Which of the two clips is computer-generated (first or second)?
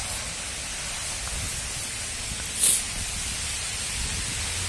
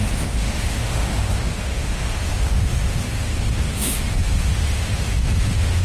second